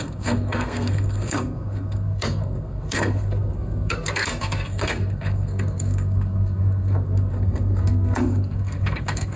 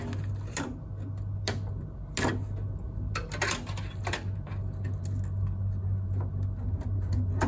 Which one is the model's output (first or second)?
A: first